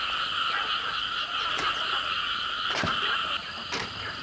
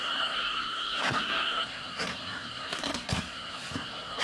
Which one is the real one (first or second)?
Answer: first